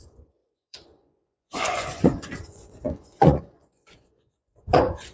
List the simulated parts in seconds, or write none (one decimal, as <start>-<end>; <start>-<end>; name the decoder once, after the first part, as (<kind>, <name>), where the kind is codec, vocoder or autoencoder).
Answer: 0.0-5.1 (vocoder, Vocos)